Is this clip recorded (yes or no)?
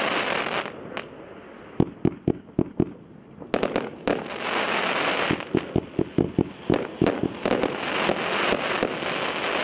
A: yes